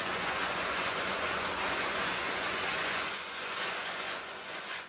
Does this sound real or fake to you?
fake